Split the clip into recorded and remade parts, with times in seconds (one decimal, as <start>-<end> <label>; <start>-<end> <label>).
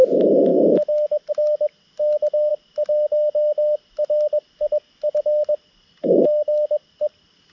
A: 0.0-7.5 recorded